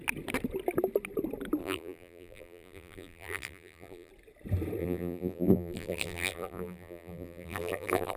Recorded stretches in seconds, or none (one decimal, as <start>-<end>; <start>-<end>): 0.0-1.6; 4.1-4.8